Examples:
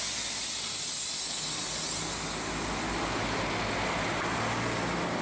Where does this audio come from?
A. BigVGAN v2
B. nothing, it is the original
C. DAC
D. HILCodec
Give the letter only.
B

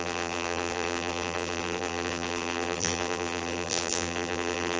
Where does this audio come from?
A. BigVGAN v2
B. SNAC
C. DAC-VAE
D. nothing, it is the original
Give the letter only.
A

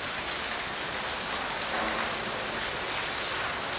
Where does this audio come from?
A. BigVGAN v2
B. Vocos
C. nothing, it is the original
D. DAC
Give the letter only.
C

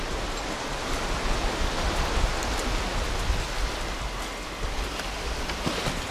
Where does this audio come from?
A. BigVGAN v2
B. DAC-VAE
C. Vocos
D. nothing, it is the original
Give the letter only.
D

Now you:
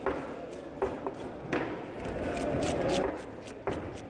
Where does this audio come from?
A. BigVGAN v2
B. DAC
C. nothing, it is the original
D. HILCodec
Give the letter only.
C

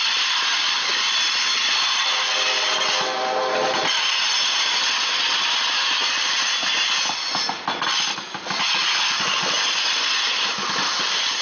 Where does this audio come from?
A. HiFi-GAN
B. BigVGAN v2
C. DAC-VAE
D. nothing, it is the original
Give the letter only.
D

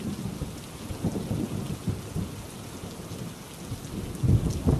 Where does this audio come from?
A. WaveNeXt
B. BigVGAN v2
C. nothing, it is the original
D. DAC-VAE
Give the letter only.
C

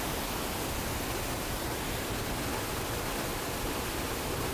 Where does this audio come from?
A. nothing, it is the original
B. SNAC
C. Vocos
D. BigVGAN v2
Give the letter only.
A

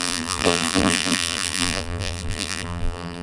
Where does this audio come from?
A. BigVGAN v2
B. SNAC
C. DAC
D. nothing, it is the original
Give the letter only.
A